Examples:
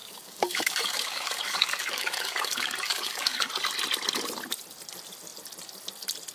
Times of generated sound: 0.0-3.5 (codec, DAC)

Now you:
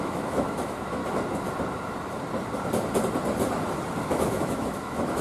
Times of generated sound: 0.0-1.0 (autoencoder, DAC-VAE); 4.0-5.2